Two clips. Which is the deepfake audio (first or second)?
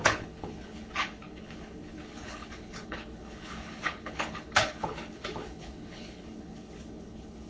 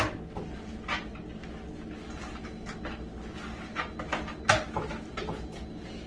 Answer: first